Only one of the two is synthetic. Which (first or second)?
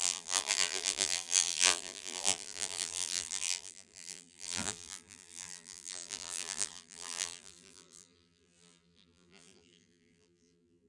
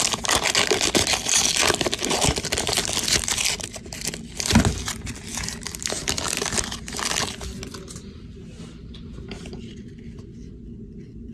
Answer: first